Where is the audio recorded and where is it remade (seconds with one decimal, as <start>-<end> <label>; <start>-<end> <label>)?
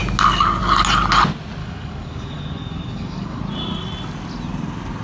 0.0-1.6 recorded; 1.6-3.4 remade; 3.4-5.0 recorded